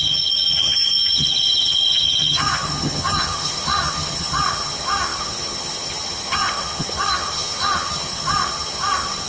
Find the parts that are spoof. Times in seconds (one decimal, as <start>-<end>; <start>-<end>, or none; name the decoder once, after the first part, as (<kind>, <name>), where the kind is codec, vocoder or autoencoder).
0.0-9.3 (vocoder, HiFi-GAN)